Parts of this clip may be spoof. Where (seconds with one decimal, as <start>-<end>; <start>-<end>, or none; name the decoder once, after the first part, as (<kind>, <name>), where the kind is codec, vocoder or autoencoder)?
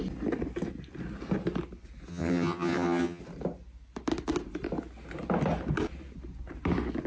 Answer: 2.1-3.2 (vocoder, HiFi-GAN)